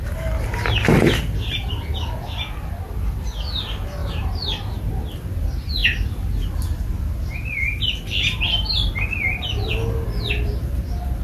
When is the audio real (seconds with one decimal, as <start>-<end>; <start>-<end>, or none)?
0.0-4.0; 4.9-11.2